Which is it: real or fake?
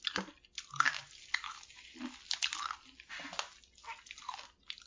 real